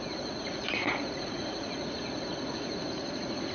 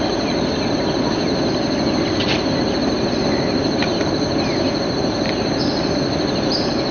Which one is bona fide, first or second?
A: second